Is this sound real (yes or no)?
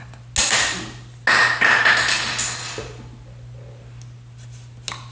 yes